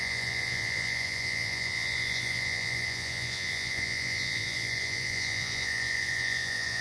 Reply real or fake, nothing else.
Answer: fake